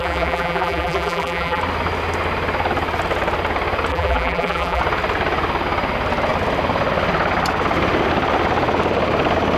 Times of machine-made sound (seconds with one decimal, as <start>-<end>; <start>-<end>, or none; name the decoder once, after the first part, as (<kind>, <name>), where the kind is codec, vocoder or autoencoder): 0.0-1.6 (vocoder, BigVGAN v2); 3.9-4.8